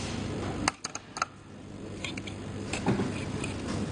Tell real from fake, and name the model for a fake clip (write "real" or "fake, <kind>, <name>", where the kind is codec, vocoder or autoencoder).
real